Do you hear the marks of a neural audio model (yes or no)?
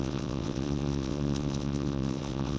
yes